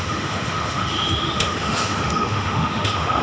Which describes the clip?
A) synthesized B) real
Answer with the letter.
A